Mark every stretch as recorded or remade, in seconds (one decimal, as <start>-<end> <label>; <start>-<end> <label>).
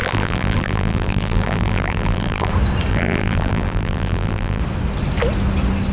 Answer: 0.0-2.5 remade; 2.5-2.9 recorded; 2.9-4.6 remade; 4.6-5.9 recorded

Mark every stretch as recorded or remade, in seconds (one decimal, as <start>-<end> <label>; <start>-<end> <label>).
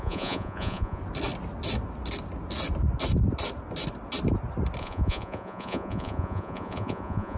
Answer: 0.0-1.0 remade; 1.0-4.8 recorded; 4.8-7.4 remade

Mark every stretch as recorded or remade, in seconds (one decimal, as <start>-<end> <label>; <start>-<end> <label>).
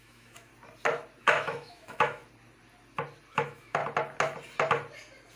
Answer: 0.0-0.5 remade; 0.5-1.2 recorded; 1.2-2.2 remade; 2.2-3.3 recorded; 3.3-3.8 remade; 3.8-5.4 recorded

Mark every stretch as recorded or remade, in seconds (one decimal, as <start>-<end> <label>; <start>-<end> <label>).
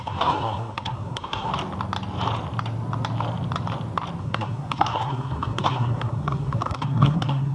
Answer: 0.0-1.5 remade; 1.5-4.2 recorded; 4.2-7.5 remade